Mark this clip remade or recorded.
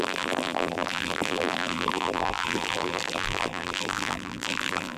remade